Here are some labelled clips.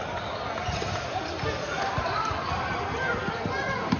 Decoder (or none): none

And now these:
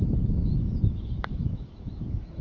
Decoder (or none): autoencoder, DAC-VAE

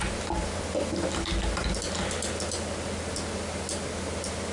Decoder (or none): none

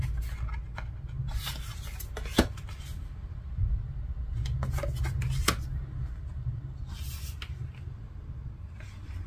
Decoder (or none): none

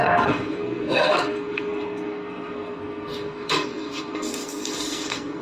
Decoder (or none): codec, SNAC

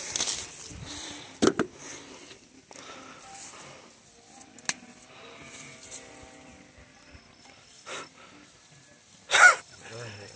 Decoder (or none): none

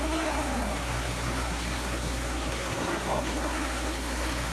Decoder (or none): codec, SNAC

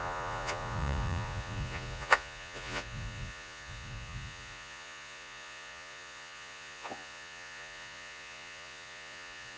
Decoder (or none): vocoder, Vocos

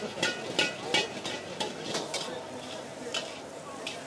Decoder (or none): vocoder, BigVGAN v2